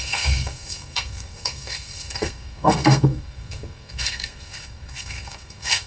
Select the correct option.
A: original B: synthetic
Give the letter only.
B